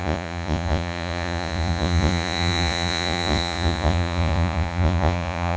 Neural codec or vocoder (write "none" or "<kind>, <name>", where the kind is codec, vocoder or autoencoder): vocoder, Vocos